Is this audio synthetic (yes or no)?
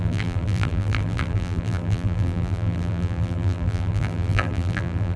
yes